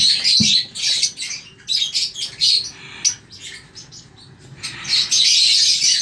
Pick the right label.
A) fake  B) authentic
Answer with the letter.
B